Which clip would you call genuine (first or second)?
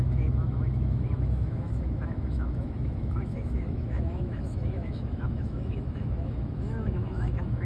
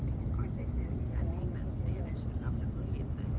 second